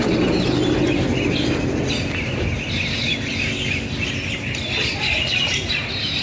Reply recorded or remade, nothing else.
recorded